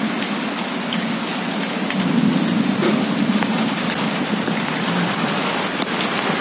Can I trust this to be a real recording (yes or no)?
yes